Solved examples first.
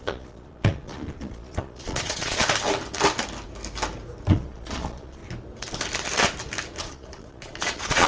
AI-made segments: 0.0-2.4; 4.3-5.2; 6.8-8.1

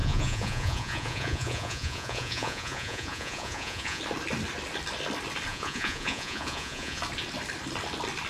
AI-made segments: 0.0-4.0; 5.5-7.0

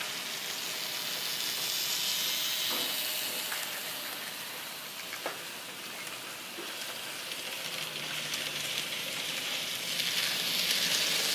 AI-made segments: 8.5-9.7